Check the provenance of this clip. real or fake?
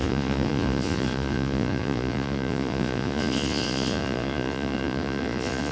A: fake